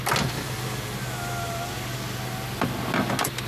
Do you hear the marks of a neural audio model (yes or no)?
no